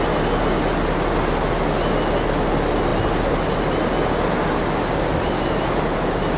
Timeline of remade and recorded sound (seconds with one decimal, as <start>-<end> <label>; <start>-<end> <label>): 0.0-6.4 recorded